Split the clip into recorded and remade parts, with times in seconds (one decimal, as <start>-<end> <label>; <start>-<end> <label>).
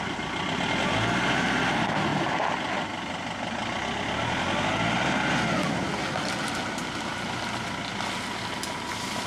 0.0-9.3 recorded